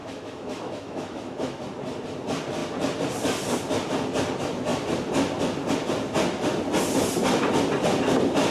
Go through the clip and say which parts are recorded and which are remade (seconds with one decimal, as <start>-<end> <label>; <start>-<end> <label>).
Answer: 0.0-1.6 remade; 1.6-8.5 recorded